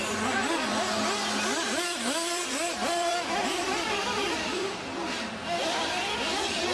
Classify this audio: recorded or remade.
remade